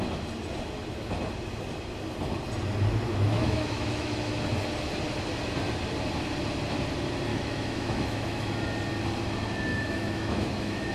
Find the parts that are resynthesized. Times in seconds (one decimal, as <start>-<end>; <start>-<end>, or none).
3.1-4.4; 7.3-8.5; 9.7-10.9